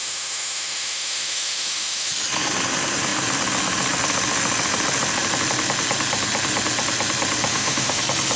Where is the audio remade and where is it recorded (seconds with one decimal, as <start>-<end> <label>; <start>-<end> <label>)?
0.0-2.1 remade; 2.1-7.5 recorded; 7.5-8.0 remade; 8.0-8.4 recorded